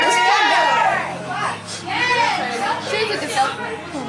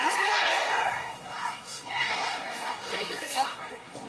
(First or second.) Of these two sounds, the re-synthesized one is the second